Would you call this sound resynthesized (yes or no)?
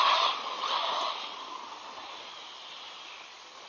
yes